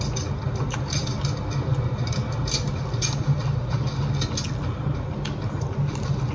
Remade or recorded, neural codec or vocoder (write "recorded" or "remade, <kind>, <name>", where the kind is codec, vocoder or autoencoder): recorded